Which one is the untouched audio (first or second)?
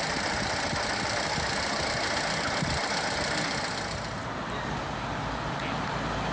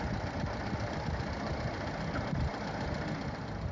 first